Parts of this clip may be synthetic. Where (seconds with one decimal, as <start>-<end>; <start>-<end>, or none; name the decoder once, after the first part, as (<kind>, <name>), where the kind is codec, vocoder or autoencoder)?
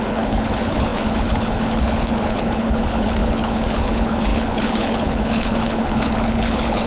0.0-6.9 (codec, HILCodec)